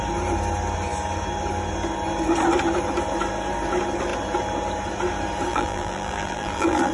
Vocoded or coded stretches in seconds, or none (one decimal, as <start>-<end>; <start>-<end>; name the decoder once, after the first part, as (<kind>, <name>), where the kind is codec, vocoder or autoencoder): 5.5-6.9 (vocoder, BigVGAN v2)